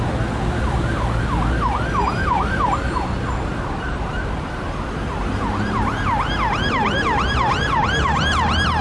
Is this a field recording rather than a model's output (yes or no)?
yes